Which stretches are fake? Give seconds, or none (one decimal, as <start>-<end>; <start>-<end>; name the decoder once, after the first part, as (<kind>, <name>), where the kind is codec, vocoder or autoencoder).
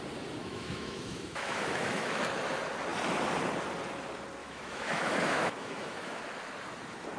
0.4-2.2 (autoencoder, DAC-VAE); 4.4-6.2